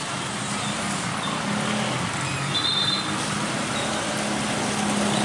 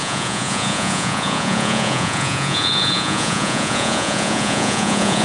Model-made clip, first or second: second